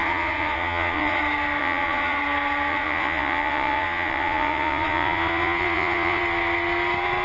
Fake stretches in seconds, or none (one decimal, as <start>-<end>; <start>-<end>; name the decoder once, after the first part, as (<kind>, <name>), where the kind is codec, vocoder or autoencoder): 0.0-1.2 (vocoder, Vocos); 1.6-2.2; 2.7-6.2